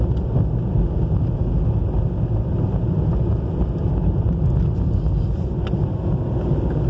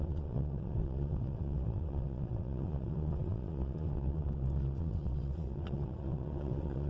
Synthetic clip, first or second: second